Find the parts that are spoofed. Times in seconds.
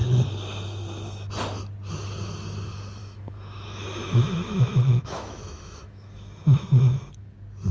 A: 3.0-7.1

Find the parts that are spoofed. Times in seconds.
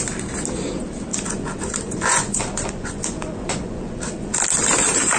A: 1.1-3.9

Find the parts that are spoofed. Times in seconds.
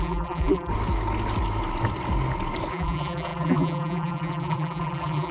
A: 0.0-0.7; 2.7-5.3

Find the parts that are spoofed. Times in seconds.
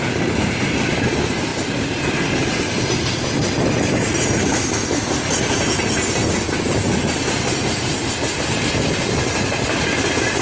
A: none